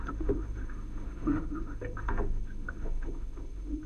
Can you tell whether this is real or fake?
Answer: fake